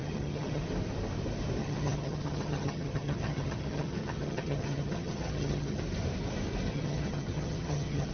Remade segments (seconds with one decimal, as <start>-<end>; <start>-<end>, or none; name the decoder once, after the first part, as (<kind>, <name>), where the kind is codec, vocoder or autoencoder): 0.0-0.6 (vocoder, HiFi-GAN); 1.6-5.8; 6.7-8.1